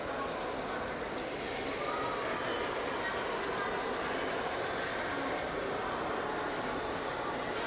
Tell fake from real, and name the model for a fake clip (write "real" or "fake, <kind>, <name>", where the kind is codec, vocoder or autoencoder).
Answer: real